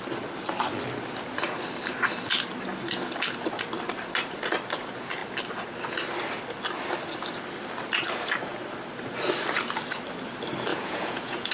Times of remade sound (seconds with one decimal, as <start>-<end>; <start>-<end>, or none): 10.7-11.5